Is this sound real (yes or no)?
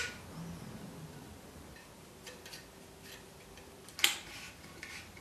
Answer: yes